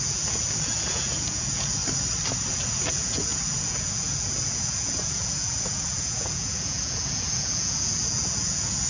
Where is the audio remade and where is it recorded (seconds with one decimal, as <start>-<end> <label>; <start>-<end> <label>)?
0.0-1.8 remade; 1.8-2.5 recorded; 2.5-8.9 remade